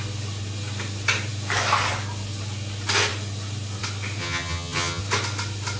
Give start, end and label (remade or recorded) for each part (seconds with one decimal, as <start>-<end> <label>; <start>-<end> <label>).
0.0-4.2 recorded; 4.2-5.0 remade; 5.0-5.8 recorded